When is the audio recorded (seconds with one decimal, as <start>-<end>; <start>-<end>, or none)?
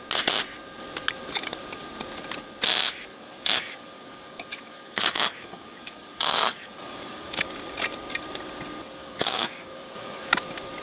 0.0-3.1; 7.5-9.0; 10.3-10.8